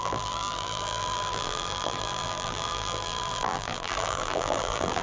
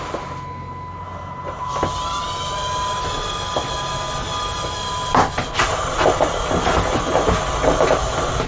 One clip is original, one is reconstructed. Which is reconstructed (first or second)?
first